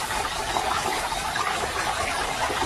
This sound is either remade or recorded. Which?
remade